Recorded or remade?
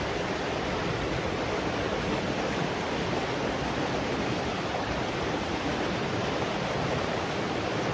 recorded